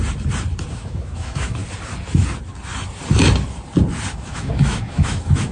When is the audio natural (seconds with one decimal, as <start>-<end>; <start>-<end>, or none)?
0.0-0.7; 1.6-4.1